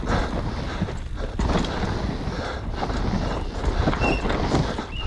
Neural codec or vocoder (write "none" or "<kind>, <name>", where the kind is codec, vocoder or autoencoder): none